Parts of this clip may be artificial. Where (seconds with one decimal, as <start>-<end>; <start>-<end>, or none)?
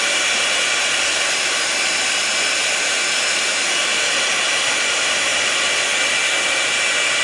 none